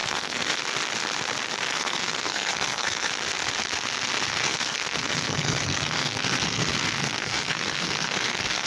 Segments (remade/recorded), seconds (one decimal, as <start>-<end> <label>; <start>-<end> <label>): 0.0-0.6 remade; 0.6-1.7 recorded; 1.7-3.1 remade; 3.1-4.3 recorded; 4.3-8.7 remade